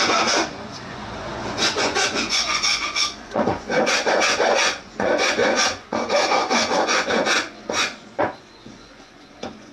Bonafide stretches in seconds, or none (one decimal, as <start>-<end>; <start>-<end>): none